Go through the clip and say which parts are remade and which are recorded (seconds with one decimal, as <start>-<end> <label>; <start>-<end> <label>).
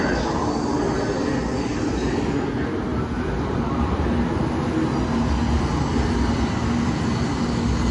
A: 0.0-7.9 recorded